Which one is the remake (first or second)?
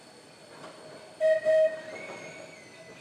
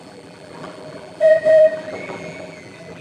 second